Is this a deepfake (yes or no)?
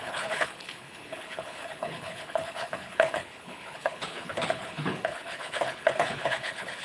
yes